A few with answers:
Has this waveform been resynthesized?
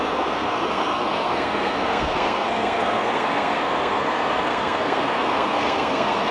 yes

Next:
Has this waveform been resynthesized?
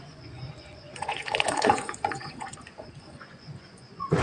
yes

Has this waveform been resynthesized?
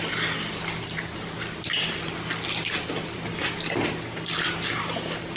no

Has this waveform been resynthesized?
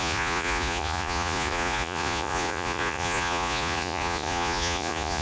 yes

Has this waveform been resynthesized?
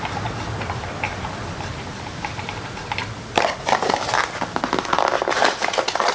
no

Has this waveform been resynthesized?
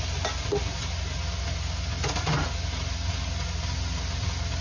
no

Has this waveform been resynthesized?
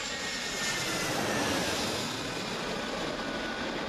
no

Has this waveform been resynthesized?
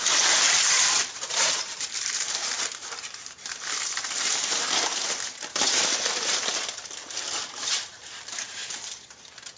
yes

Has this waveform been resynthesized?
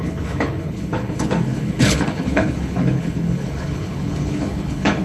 yes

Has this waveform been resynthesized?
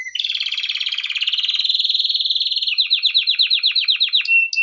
no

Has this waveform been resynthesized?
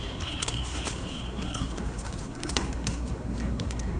yes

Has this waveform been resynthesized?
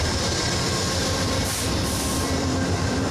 yes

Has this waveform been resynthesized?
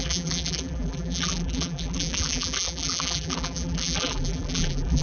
yes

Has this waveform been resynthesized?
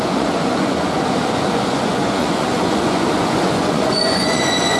yes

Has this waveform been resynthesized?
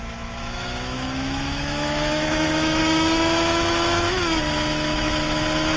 yes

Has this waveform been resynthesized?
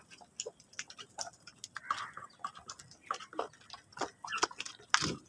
no